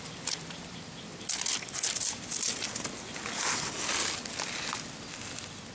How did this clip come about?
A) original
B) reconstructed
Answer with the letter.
A